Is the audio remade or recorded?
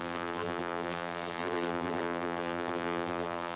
remade